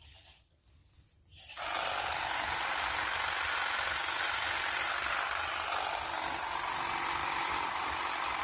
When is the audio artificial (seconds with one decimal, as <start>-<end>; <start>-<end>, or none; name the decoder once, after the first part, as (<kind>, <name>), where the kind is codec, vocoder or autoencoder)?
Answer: 0.8-1.8 (vocoder, BigVGAN v2); 7.2-8.4